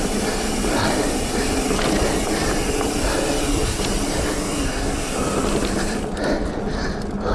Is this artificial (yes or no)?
no